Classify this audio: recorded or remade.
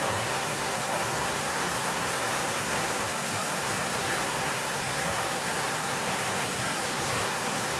remade